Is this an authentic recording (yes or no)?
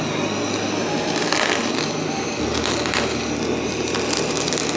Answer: yes